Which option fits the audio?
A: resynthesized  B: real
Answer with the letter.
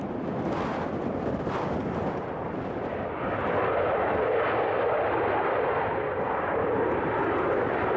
B